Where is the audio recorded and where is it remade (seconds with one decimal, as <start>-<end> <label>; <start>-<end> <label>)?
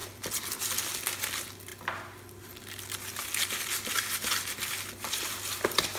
0.0-6.0 recorded